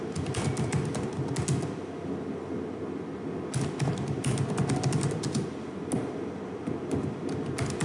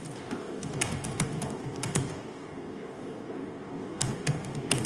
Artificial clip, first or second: second